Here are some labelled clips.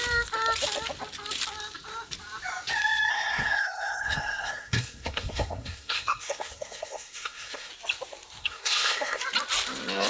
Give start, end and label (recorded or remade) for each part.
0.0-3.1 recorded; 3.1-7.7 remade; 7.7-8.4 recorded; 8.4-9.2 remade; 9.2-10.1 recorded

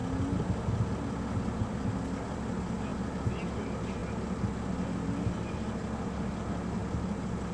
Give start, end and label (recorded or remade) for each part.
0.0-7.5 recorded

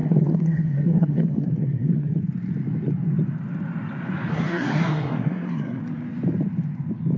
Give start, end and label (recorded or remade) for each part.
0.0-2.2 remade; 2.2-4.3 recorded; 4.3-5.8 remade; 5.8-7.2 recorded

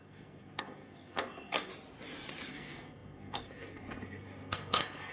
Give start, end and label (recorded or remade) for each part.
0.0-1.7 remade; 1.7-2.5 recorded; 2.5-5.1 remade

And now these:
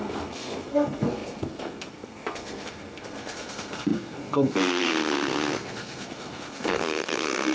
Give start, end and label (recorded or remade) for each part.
0.0-7.5 remade

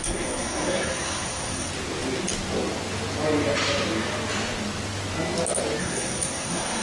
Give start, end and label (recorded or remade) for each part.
0.0-1.7 remade; 1.7-5.8 recorded; 5.8-6.8 remade

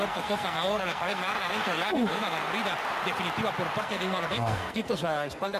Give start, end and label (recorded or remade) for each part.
0.0-2.5 remade; 2.5-3.8 recorded; 3.8-5.6 remade

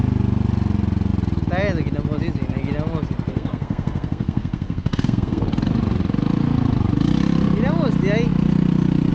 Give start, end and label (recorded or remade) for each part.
0.0-3.3 recorded; 3.3-5.4 remade; 5.4-9.1 recorded